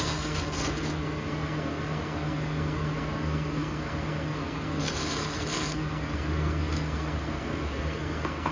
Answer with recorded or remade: remade